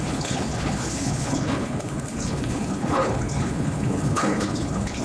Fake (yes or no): yes